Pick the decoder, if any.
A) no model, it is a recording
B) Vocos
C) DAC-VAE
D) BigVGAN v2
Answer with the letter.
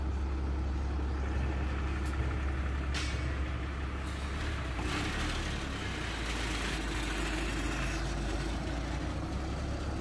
A